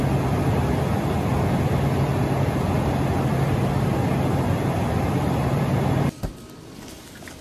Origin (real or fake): real